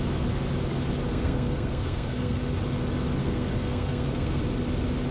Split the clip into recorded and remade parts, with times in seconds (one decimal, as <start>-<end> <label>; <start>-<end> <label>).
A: 0.0-1.1 recorded; 1.1-2.4 remade; 2.4-3.2 recorded; 3.2-4.4 remade; 4.4-5.1 recorded